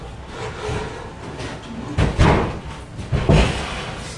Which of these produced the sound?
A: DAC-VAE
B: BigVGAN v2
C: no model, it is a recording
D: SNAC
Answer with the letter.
C